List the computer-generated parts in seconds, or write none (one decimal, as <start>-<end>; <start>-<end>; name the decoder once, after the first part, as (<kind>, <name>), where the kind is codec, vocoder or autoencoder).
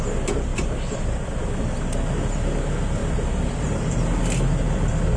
0.5-1.4 (vocoder, BigVGAN v2); 3.0-4.2